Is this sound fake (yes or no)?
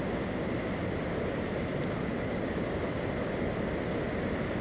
no